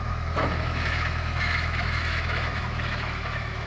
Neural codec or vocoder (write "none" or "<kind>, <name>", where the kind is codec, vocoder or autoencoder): autoencoder, DAC-VAE